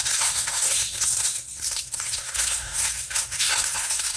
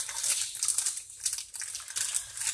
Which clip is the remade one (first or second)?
first